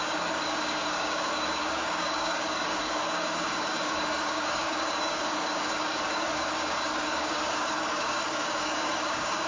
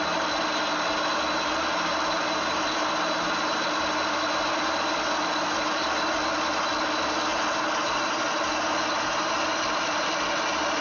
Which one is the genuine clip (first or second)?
second